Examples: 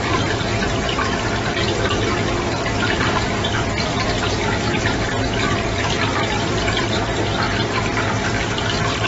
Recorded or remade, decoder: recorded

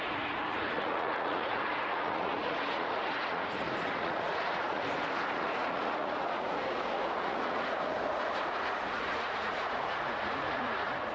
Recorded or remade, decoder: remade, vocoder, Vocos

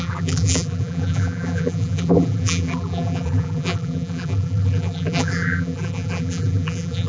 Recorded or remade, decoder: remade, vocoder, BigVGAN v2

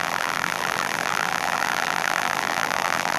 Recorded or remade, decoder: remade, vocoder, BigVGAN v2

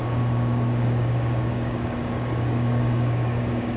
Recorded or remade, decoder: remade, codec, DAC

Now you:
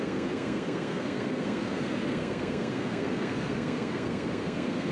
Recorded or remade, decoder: remade, codec, SNAC